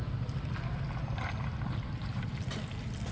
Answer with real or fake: real